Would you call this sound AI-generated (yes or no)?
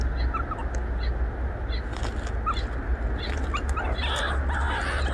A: no